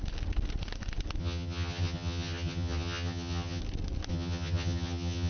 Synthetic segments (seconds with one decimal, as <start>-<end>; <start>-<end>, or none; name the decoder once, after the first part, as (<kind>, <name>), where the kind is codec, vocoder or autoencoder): 1.2-3.6 (vocoder, HiFi-GAN); 4.1-5.3